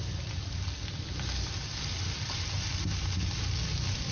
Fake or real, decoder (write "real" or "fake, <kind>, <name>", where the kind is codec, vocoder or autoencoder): real